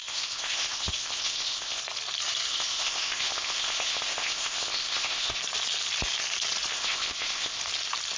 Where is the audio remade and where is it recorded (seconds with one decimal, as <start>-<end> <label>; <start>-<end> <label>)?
0.0-1.8 remade; 1.8-2.5 recorded; 2.5-5.4 remade; 5.4-6.7 recorded; 6.7-7.6 remade; 7.6-8.2 recorded